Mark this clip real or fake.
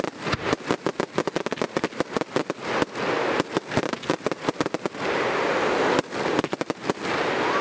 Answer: real